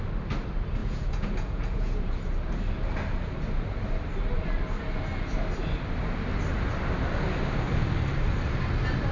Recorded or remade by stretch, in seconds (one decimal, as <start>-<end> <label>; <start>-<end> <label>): 0.0-0.8 recorded; 0.8-2.0 remade; 2.0-9.1 recorded